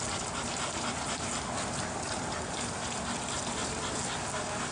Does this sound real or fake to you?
real